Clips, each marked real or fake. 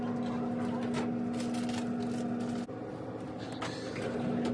real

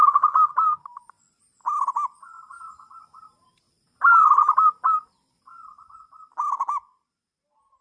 real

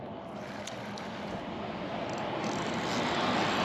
real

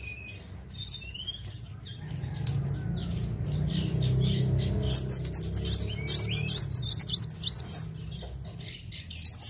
real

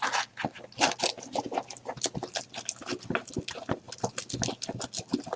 real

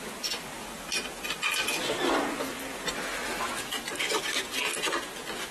real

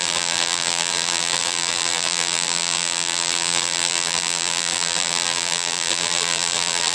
fake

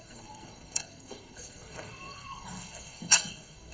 fake